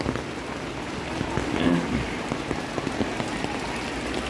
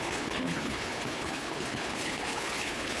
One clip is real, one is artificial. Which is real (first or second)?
first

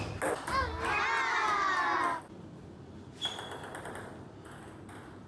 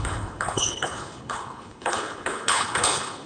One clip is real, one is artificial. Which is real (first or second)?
first